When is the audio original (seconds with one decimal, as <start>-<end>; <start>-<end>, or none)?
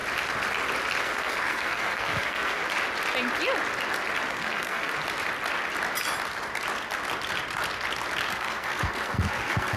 0.0-1.0; 2.6-4.3; 4.9-8.3